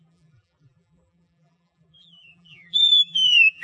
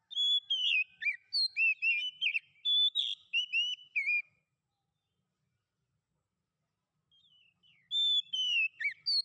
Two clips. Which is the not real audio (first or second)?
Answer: first